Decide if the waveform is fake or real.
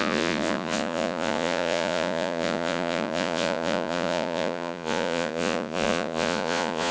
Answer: fake